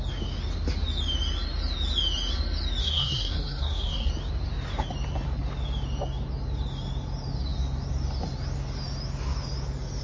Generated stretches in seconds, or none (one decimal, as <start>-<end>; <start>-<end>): 2.8-4.1